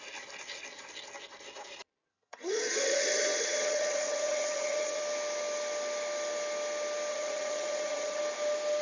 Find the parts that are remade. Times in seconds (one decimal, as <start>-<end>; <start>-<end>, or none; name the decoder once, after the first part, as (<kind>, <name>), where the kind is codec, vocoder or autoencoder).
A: 2.1-5.0 (vocoder, HiFi-GAN); 7.1-8.2